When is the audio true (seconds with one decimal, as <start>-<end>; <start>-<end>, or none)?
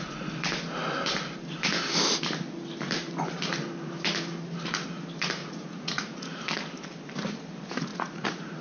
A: 0.0-5.4; 6.2-7.9